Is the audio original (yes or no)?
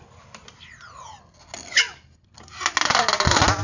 yes